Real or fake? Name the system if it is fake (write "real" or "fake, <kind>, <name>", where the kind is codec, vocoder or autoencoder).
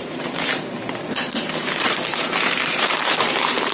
fake, vocoder, BigVGAN v2